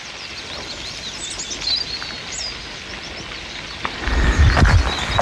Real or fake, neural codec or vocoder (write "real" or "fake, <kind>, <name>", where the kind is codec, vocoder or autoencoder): real